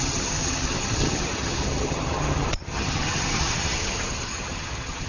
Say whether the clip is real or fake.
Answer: fake